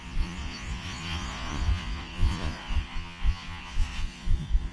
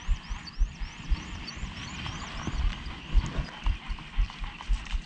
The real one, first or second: second